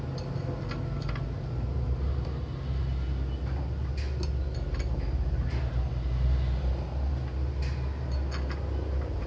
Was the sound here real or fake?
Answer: real